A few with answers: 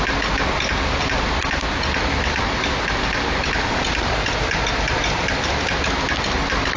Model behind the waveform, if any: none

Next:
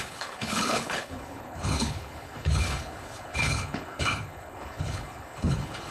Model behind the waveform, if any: codec, HILCodec